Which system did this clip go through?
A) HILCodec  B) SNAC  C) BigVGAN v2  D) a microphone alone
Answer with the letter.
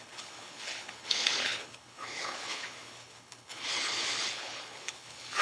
A